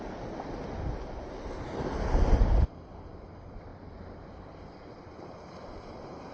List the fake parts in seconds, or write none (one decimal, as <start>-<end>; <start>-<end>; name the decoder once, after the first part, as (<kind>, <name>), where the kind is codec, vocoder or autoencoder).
none